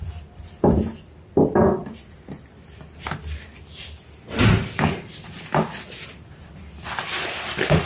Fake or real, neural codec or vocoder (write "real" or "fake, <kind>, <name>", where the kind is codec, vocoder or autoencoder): real